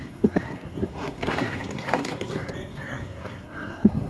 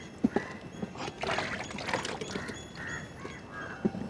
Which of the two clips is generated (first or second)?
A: first